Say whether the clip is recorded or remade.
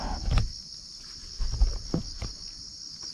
recorded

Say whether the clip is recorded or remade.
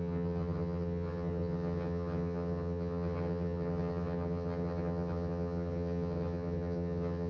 remade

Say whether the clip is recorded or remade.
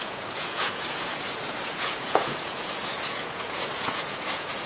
remade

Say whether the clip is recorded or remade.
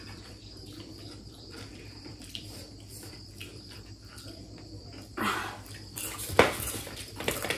remade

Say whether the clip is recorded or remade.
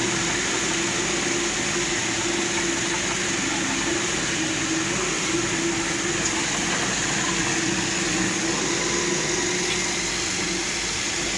recorded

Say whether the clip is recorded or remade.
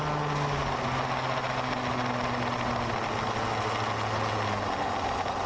recorded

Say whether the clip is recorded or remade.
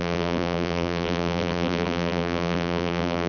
remade